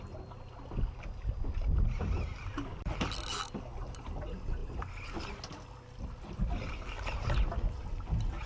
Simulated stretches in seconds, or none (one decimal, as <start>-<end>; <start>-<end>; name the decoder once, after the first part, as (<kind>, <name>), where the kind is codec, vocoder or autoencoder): none